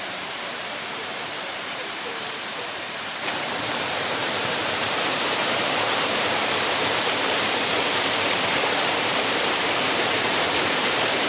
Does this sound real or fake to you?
fake